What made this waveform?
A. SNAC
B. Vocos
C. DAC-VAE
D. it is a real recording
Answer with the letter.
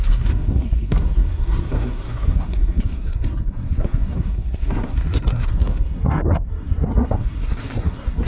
A